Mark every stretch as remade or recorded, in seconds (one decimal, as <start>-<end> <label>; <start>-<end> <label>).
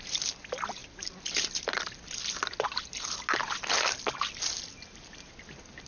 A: 0.0-5.9 recorded